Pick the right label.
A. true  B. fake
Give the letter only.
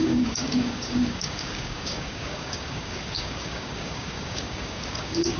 B